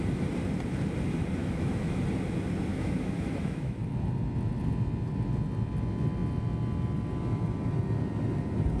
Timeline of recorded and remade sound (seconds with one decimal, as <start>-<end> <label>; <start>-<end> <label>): 0.0-1.4 recorded; 1.4-2.0 remade; 2.0-2.7 recorded; 2.7-3.8 remade; 3.8-8.8 recorded